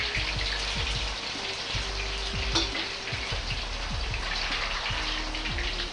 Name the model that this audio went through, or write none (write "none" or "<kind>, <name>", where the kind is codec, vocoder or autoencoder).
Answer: none